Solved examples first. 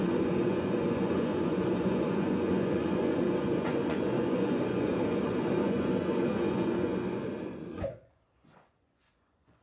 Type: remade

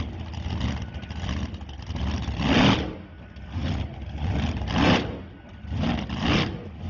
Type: recorded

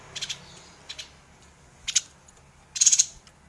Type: recorded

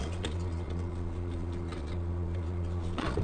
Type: remade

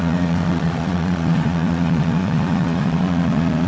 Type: remade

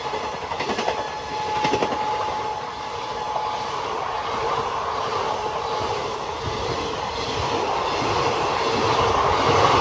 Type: recorded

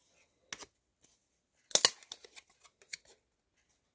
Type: recorded